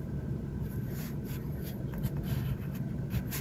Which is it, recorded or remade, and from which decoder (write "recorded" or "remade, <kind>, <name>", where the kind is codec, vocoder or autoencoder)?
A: remade, vocoder, BigVGAN v2